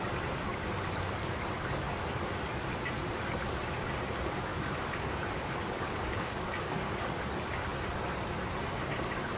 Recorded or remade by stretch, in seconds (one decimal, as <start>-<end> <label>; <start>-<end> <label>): 0.0-4.5 recorded; 4.5-5.1 remade; 5.1-5.6 recorded; 5.6-7.2 remade; 7.2-9.4 recorded